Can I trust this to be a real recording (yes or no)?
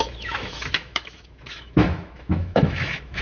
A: no